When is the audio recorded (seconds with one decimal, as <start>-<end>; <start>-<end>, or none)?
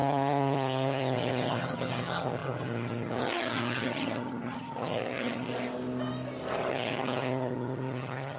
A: 5.5-6.7